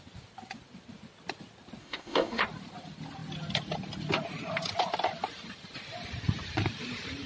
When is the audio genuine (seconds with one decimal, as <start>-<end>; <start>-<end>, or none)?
0.0-1.8; 2.4-7.3